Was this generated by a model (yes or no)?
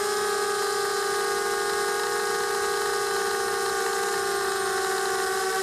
no